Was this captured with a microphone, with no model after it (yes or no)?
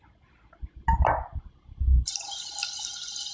yes